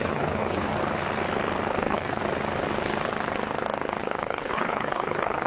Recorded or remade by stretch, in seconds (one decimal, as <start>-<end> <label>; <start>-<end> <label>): 0.0-0.7 remade; 0.7-1.8 recorded; 1.8-2.2 remade; 2.2-4.0 recorded; 4.0-5.5 remade